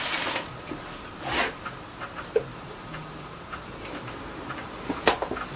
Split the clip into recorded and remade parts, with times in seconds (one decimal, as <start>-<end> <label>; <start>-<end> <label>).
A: 0.0-2.5 recorded; 2.5-5.6 remade